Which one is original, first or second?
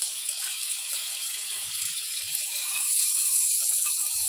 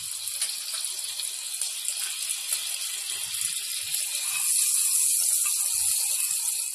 second